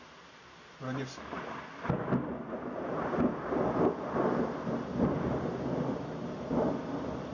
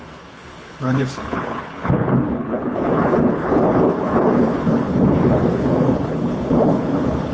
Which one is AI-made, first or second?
second